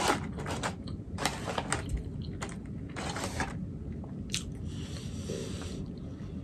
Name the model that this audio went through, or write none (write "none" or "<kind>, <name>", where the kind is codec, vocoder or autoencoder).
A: none